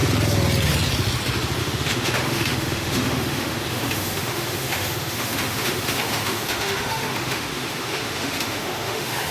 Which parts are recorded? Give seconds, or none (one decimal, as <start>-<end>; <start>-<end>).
0.0-1.6